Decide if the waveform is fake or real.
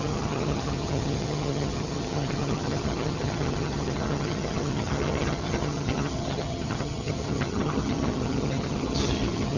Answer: fake